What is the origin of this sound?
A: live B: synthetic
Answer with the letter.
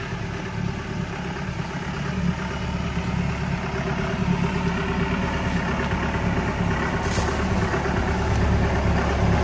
A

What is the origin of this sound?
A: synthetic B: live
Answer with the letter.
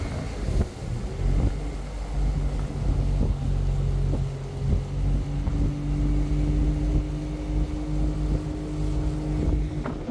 B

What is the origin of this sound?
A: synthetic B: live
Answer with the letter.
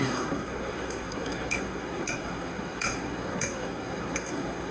A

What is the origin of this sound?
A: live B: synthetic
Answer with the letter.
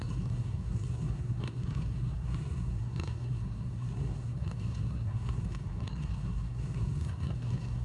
B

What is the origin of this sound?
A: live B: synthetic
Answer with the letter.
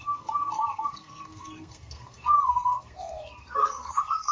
B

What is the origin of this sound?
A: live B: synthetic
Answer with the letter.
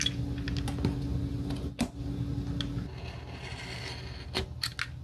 A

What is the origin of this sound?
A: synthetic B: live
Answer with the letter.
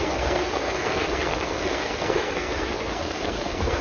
A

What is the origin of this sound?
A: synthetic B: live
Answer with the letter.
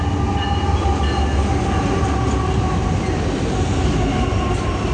B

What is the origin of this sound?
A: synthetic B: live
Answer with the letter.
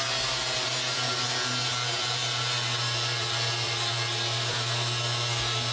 B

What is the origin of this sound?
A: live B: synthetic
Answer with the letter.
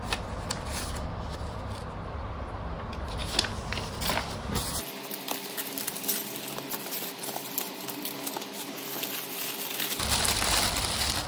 A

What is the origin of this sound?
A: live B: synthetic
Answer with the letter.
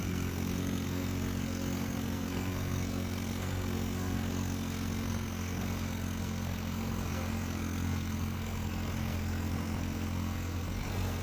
B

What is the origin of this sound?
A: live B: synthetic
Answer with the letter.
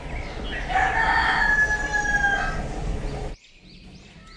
A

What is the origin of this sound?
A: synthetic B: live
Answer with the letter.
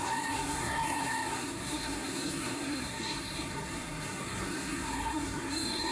A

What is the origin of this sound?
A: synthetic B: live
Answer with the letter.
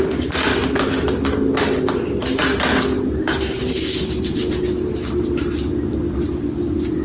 B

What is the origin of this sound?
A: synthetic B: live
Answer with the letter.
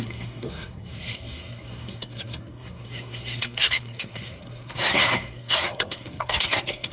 A